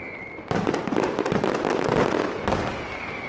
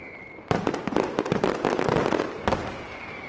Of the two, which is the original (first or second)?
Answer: second